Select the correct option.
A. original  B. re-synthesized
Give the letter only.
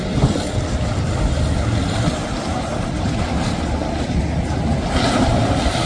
A